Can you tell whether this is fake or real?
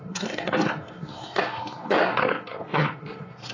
fake